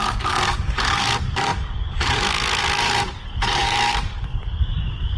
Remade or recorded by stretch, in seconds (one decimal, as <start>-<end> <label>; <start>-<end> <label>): 0.0-5.2 remade